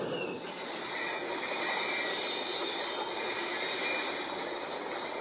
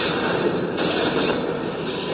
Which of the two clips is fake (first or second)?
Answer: second